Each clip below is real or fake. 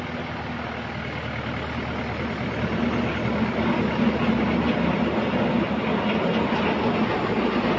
real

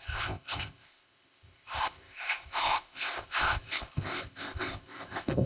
fake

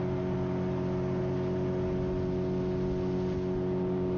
real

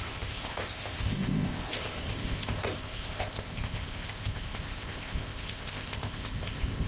fake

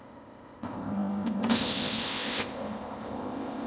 fake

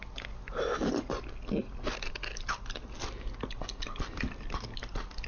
real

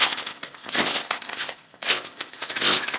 fake